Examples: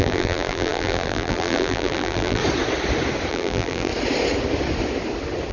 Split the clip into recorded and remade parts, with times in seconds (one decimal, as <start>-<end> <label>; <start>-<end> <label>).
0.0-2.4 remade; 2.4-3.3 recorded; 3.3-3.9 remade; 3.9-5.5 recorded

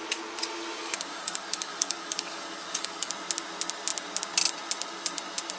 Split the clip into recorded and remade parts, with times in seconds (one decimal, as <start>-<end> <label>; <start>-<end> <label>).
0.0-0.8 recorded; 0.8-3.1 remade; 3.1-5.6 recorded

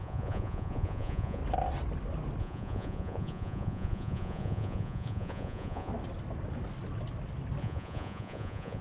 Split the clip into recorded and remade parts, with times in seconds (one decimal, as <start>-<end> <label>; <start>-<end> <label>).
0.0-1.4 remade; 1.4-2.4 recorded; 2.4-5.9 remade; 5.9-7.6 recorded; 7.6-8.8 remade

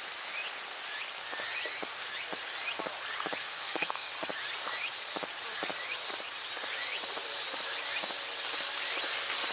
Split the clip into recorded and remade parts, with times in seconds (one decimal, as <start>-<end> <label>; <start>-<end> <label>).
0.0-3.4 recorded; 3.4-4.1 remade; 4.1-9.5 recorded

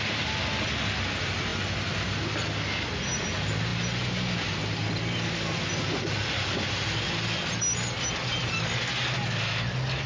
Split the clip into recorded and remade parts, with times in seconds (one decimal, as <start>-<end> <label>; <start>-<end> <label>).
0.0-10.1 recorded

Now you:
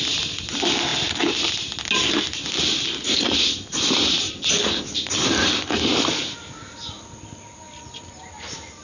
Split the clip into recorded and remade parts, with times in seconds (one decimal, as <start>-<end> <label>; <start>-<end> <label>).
0.0-8.8 recorded